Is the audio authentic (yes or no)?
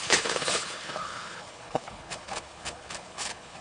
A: no